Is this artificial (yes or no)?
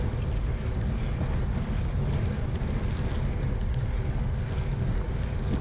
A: no